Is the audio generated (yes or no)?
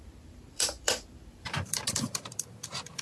yes